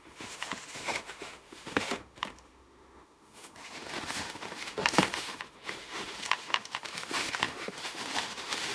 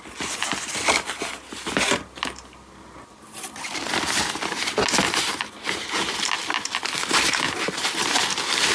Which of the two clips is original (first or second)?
second